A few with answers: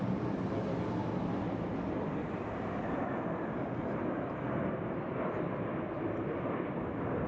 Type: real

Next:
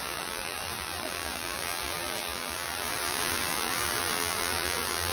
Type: fake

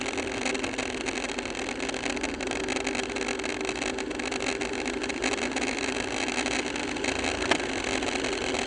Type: real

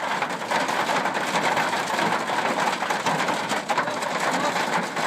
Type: real